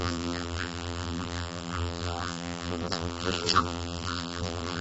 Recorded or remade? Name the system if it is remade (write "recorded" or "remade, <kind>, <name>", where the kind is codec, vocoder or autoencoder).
remade, vocoder, BigVGAN v2